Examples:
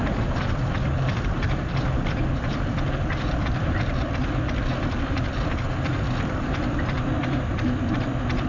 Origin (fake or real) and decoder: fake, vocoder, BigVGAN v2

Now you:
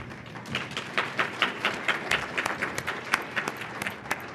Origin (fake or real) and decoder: fake, vocoder, BigVGAN v2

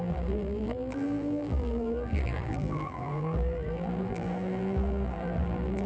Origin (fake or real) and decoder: fake, vocoder, BigVGAN v2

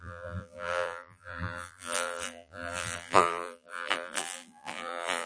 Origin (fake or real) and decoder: fake, vocoder, BigVGAN v2